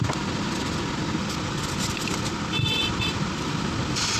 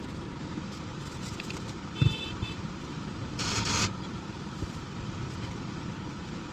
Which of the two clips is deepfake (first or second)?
second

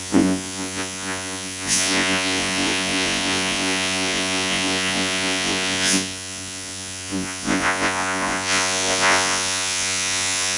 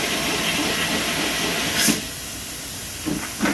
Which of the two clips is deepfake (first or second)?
first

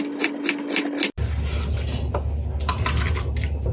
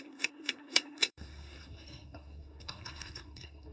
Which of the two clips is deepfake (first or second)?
second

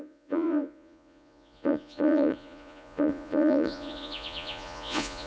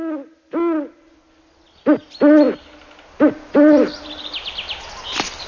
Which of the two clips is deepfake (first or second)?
first